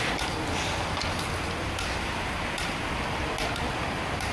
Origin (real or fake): real